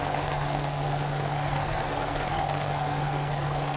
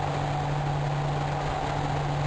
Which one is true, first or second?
second